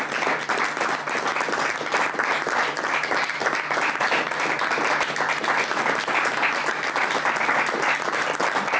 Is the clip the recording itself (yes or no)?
yes